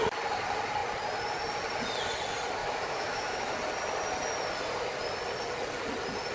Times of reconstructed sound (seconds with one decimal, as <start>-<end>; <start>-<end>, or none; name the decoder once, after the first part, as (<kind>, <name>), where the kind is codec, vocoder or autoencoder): 2.6-3.5 (autoencoder, DAC-VAE)